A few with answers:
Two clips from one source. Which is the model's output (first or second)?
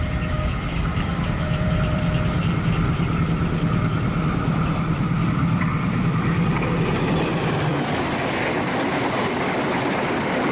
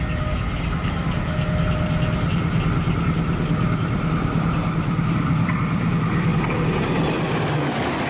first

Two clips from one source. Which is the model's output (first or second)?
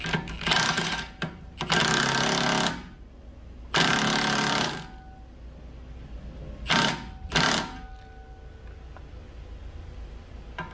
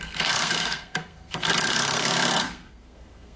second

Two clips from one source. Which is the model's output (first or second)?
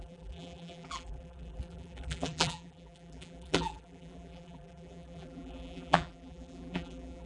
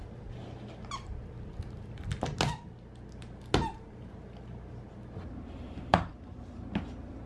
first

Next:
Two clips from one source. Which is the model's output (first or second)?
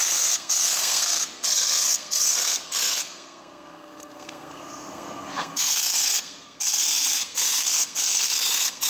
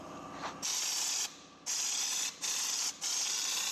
first